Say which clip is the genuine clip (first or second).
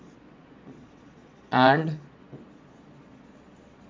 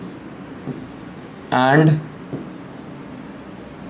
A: second